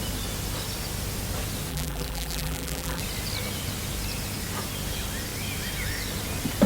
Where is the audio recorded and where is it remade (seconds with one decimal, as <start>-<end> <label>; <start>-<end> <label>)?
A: 0.0-1.7 recorded; 1.7-3.0 remade; 3.0-6.7 recorded